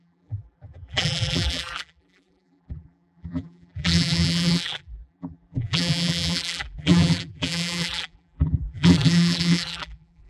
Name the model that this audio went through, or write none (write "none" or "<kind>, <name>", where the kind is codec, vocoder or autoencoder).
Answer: vocoder, BigVGAN v2